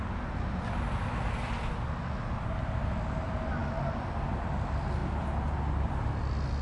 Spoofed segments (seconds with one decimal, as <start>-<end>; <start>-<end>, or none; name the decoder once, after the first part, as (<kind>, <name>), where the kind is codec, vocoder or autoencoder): none